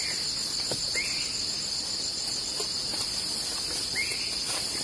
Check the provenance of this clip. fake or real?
real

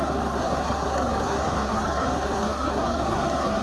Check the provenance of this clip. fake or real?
fake